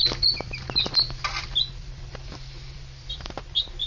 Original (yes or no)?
no